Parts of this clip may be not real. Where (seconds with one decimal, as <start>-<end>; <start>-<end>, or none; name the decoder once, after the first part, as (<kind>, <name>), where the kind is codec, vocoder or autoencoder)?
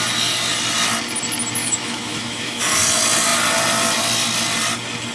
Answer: 1.6-2.6 (autoencoder, DAC-VAE)